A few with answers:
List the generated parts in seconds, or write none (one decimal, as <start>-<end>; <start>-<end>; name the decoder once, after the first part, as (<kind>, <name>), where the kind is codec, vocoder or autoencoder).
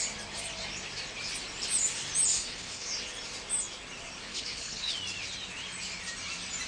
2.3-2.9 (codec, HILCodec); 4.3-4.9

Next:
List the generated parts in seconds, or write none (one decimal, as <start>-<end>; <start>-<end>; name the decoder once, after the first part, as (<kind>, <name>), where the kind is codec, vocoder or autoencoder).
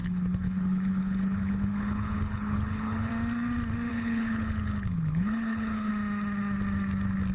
0.0-3.1 (codec, HILCodec); 3.9-5.9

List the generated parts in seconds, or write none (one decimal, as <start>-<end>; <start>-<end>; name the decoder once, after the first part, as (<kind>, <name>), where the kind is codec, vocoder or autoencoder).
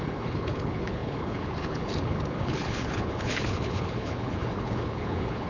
0.0-5.5 (codec, HILCodec)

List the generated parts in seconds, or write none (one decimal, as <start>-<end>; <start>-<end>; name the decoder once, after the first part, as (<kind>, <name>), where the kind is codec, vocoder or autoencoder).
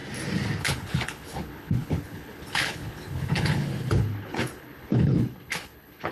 0.6-6.1 (codec, HILCodec)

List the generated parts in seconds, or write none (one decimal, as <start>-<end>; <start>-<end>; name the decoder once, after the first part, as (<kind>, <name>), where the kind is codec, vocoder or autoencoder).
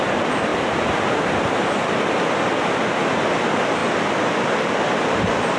none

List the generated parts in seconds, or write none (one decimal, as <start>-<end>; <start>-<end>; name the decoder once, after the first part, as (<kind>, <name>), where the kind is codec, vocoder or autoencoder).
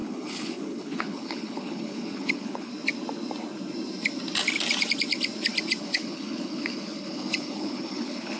0.0-2.7 (codec, HILCodec); 5.8-8.4